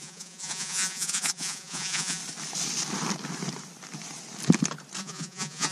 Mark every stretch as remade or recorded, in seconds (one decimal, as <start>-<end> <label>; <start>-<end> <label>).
0.0-2.2 remade; 2.2-5.0 recorded; 5.0-5.7 remade